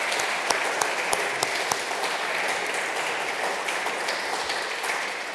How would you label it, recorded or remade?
recorded